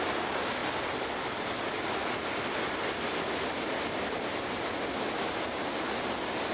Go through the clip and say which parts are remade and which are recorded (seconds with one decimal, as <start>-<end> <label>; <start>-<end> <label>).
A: 0.0-6.5 recorded